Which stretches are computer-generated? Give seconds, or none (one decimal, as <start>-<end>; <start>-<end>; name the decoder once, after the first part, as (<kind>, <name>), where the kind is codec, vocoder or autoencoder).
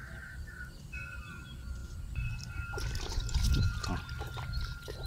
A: 0.0-1.3 (vocoder, BigVGAN v2); 1.8-5.1